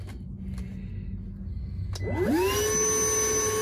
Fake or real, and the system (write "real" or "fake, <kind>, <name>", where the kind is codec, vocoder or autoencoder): real